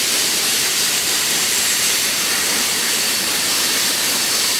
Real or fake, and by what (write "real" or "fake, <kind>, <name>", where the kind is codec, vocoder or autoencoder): fake, vocoder, BigVGAN v2